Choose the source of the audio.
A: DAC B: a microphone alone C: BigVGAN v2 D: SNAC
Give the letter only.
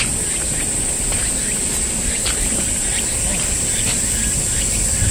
B